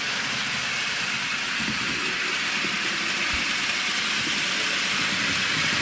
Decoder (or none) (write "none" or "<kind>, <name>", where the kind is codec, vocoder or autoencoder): none